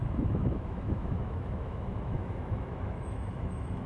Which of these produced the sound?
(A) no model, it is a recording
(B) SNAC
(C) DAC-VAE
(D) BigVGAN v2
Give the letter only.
C